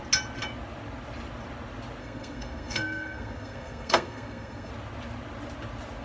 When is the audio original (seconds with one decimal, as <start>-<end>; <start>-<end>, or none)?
0.0-2.0; 4.7-6.0